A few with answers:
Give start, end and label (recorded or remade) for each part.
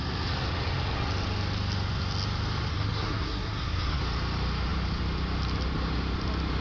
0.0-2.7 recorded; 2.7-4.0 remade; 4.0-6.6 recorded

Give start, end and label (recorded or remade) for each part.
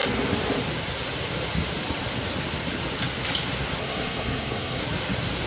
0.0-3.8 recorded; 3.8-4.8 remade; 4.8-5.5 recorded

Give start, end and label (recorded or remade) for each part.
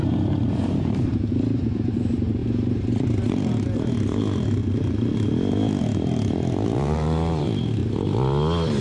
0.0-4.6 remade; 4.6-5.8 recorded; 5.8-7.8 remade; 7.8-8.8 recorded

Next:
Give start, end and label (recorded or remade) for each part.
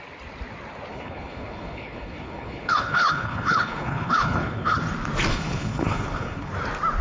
0.0-0.9 recorded; 0.9-4.8 remade; 4.8-5.3 recorded; 5.3-6.5 remade; 6.5-7.0 recorded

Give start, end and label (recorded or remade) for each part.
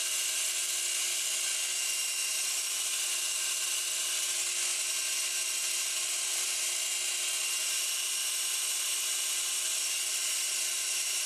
0.0-11.3 recorded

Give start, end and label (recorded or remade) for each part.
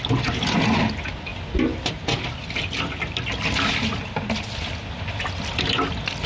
0.0-6.3 recorded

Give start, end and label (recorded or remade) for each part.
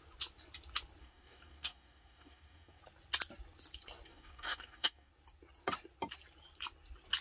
0.0-1.0 recorded; 1.0-2.8 remade; 2.8-4.1 recorded; 4.1-5.1 remade; 5.1-7.2 recorded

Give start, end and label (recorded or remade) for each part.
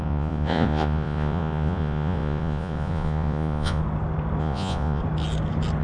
0.0-3.8 remade; 3.8-4.4 recorded; 4.4-5.0 remade; 5.0-5.8 recorded